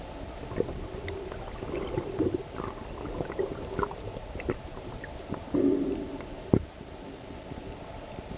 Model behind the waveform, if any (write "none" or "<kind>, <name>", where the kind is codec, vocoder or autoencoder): none